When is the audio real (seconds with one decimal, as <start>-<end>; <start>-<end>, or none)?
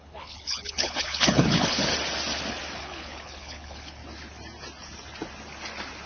1.9-2.8; 4.0-6.1